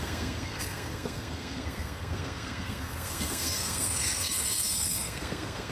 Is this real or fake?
fake